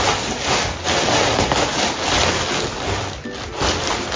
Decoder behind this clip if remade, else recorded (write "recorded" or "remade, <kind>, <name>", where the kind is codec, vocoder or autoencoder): recorded